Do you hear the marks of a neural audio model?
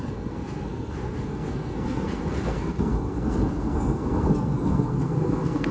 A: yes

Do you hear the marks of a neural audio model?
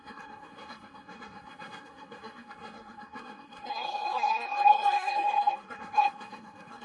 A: yes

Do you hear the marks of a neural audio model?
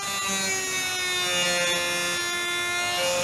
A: no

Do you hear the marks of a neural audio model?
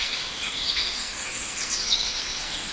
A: yes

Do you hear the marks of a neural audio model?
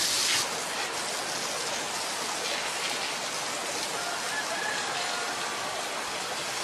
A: no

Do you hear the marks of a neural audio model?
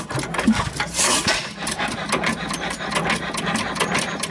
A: no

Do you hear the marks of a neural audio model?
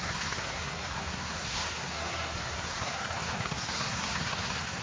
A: yes